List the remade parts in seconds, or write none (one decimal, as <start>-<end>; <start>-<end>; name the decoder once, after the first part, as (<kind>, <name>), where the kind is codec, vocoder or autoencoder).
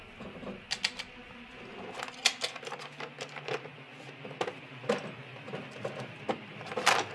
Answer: none